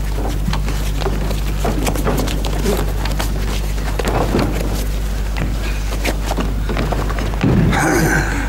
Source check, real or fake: real